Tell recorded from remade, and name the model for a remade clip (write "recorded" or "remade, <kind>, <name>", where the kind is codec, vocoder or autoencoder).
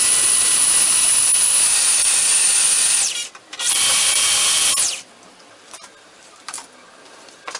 remade, vocoder, BigVGAN v2